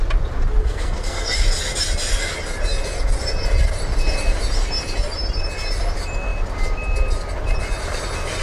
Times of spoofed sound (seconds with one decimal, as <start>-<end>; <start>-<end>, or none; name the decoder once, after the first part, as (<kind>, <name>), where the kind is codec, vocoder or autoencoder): 0.6-1.4 (codec, SNAC)